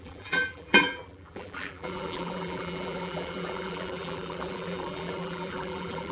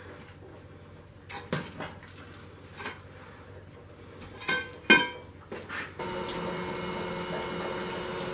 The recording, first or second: second